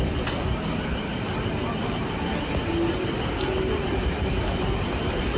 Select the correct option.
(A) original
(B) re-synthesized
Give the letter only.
A